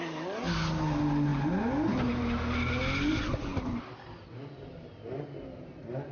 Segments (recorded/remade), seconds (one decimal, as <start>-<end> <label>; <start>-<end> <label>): 0.0-6.1 recorded

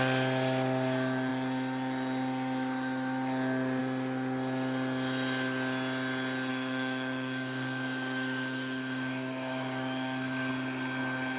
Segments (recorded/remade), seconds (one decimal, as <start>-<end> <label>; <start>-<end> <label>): 0.0-6.5 recorded; 6.5-10.5 remade; 10.5-11.4 recorded

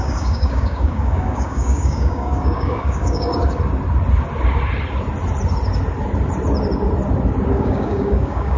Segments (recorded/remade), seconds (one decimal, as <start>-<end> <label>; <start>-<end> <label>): 0.0-3.3 remade; 3.3-7.5 recorded; 7.5-8.6 remade

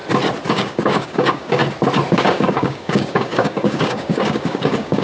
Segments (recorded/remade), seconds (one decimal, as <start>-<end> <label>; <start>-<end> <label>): 0.0-0.5 recorded; 0.5-1.6 remade; 1.6-2.1 recorded; 2.1-5.0 remade

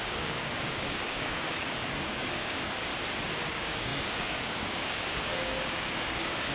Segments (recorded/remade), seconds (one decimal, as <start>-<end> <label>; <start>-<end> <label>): 0.0-2.9 remade; 2.9-3.5 recorded; 3.5-6.5 remade

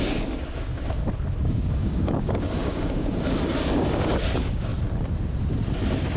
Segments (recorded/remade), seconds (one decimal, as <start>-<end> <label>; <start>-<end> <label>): 0.0-0.7 remade; 0.7-1.4 recorded; 1.4-4.7 remade; 4.7-6.2 recorded

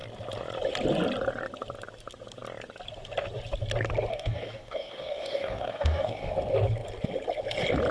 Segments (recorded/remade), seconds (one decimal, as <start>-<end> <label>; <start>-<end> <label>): 0.0-4.1 recorded; 4.1-6.3 remade; 6.3-7.9 recorded